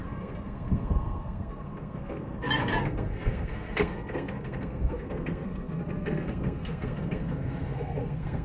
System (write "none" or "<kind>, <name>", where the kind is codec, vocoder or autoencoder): codec, SNAC